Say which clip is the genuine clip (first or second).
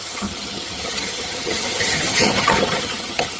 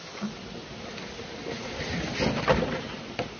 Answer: second